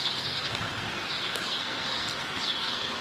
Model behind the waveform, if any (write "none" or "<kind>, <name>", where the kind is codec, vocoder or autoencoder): codec, SNAC